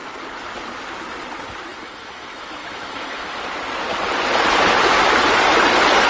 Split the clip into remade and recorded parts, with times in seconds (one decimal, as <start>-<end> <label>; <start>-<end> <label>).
0.0-1.7 recorded; 1.7-3.4 remade; 3.4-6.1 recorded